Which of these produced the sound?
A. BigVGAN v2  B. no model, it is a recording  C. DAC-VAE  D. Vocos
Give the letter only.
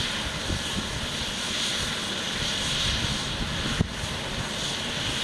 B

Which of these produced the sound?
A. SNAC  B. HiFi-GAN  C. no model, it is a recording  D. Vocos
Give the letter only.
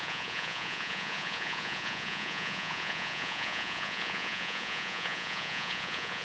D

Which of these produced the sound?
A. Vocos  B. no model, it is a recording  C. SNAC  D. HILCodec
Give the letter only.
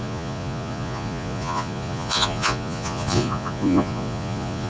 A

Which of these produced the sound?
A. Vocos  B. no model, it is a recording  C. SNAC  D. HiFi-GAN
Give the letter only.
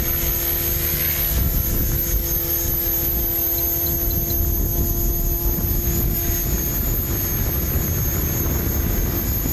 B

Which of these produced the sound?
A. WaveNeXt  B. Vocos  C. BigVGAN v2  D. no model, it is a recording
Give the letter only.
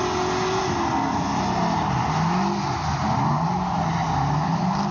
D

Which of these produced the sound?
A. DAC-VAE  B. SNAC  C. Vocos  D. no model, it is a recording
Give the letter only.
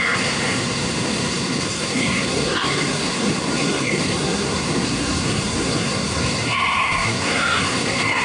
B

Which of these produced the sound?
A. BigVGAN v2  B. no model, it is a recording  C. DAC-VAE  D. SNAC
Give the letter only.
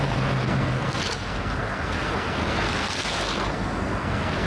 D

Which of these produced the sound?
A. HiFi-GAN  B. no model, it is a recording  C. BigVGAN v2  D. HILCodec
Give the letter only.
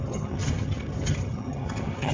A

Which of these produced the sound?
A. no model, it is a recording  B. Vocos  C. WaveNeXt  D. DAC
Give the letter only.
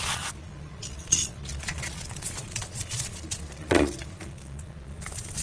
B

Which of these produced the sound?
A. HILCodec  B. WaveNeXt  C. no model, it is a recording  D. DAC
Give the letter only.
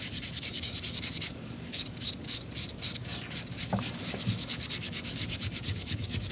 D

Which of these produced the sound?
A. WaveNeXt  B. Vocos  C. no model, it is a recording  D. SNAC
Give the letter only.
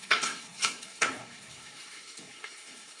D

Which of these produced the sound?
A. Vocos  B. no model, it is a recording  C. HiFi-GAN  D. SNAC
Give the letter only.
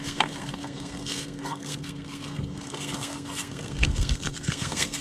D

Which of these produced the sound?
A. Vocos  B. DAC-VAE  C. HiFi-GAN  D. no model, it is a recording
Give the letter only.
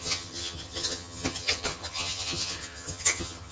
C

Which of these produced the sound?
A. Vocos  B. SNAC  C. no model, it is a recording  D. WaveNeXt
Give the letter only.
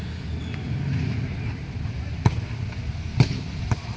C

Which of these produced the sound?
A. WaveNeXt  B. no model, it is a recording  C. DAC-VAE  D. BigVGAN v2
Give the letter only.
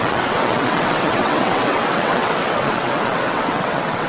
A